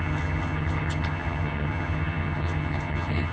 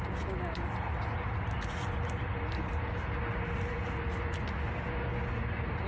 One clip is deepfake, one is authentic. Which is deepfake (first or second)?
first